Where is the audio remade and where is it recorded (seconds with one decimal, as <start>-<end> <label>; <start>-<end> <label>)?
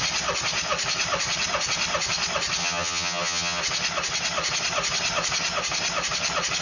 0.0-2.6 recorded; 2.6-3.6 remade; 3.6-6.6 recorded